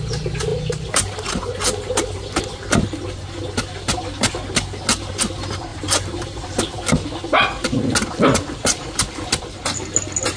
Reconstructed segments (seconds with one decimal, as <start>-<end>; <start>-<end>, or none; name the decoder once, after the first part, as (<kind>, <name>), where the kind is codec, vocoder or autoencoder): 5.7-6.6 (vocoder, BigVGAN v2)